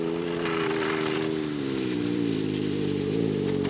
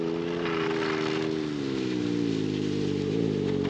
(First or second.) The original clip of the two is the second